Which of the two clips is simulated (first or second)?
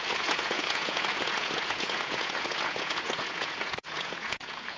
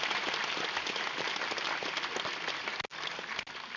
first